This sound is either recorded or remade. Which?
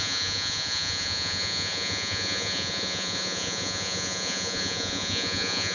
remade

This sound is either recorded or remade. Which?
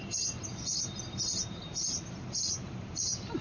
remade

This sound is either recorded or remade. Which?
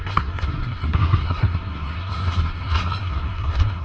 remade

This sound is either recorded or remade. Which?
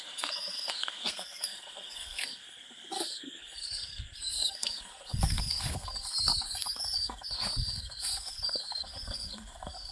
remade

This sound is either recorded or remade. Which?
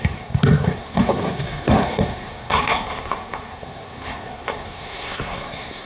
remade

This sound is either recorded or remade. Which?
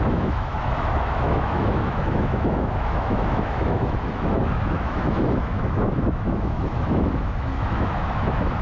remade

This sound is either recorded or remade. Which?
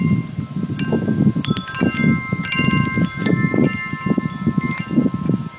recorded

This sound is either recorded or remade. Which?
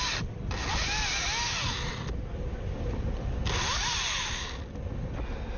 recorded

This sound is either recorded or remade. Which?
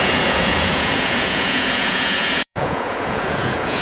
remade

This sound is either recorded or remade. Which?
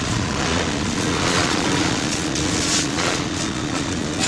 remade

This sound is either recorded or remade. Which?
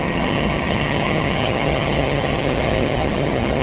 remade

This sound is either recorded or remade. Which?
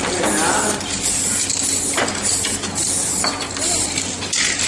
recorded